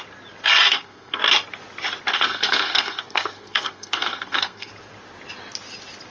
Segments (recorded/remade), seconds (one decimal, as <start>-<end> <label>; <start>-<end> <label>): 0.0-0.7 recorded; 0.7-1.2 remade; 1.2-2.1 recorded; 2.1-4.7 remade; 4.7-6.1 recorded